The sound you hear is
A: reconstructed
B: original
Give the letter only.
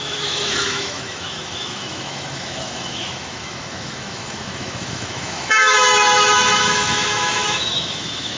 A